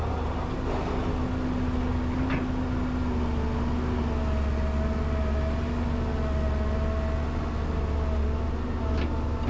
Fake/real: real